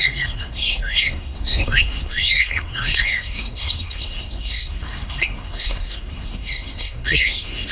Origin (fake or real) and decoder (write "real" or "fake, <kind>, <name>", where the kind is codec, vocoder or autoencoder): fake, codec, SNAC